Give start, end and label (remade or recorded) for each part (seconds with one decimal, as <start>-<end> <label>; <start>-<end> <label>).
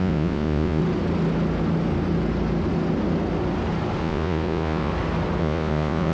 0.0-0.8 remade; 0.8-4.0 recorded; 4.0-4.9 remade; 4.9-5.4 recorded; 5.4-6.1 remade